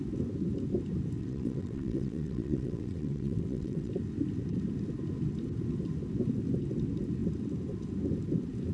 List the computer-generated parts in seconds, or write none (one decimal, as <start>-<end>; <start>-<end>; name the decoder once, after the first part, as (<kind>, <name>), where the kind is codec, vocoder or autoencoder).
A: 1.2-3.9 (vocoder, WaveNeXt)